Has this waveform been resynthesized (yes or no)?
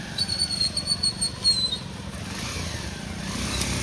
no